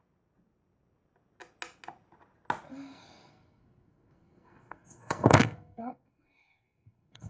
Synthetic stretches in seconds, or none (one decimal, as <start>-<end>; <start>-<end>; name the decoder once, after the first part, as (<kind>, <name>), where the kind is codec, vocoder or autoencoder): 2.7-7.3 (codec, SNAC)